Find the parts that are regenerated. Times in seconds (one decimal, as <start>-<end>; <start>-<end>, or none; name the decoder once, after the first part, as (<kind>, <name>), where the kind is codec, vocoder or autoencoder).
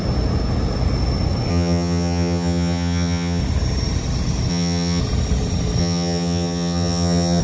1.5-3.4 (vocoder, HiFi-GAN); 4.5-5.0; 5.8-7.4